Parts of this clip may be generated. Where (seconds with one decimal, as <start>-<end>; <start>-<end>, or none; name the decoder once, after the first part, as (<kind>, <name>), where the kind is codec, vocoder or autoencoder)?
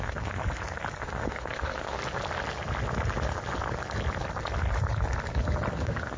0.0-0.4 (codec, SNAC); 1.0-2.0; 5.7-6.2